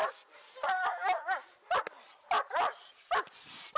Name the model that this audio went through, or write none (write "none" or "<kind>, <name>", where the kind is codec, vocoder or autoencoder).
none